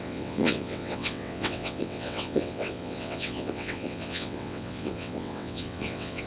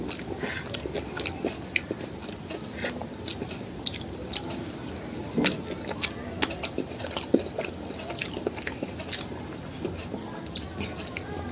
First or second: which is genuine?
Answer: second